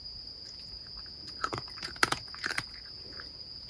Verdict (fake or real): fake